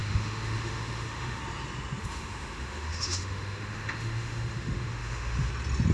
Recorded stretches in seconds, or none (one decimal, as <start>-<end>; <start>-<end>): 1.4-2.0; 5.5-5.9